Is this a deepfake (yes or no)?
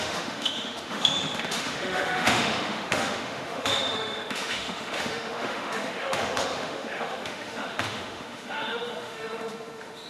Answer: yes